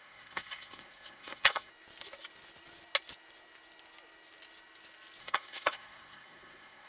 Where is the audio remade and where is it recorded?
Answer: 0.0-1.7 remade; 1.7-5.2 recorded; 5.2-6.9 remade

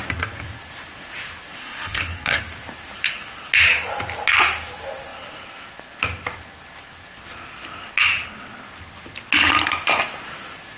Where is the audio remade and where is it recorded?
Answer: 0.0-1.6 recorded; 1.6-2.4 remade; 2.4-10.8 recorded